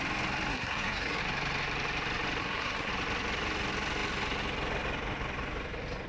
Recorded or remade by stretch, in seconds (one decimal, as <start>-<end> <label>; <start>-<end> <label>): 0.0-0.5 recorded; 0.5-1.2 remade; 1.2-2.4 recorded; 2.4-2.9 remade; 2.9-6.1 recorded